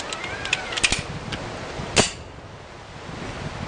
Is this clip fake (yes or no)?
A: no